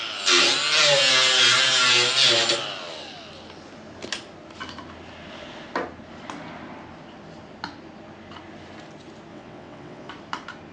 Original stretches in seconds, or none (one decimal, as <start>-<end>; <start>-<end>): 0.0-9.3; 10.1-10.7